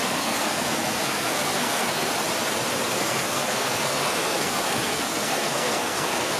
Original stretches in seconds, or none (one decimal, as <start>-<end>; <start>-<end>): 2.1-2.9